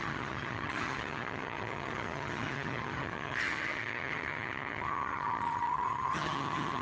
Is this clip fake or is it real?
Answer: fake